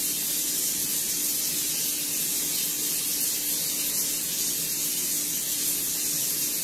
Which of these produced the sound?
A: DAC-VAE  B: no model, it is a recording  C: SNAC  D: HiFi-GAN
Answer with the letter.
B